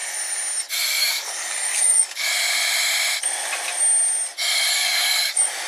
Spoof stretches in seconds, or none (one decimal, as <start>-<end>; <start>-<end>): 1.0-2.3; 4.7-5.7